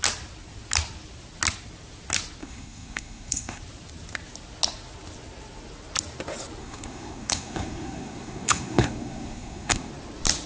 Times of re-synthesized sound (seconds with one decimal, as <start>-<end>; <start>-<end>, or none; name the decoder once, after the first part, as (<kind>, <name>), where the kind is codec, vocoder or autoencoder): 2.4-3.6 (codec, SNAC); 6.6-9.9